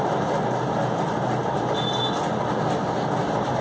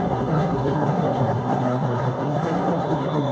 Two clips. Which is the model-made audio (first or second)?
second